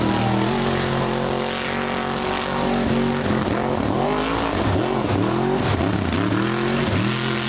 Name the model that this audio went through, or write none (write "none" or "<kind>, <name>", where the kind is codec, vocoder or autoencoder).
none